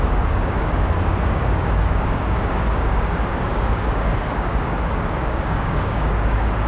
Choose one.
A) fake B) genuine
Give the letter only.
A